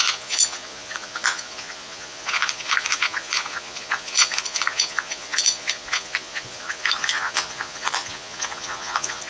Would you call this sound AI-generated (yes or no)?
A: yes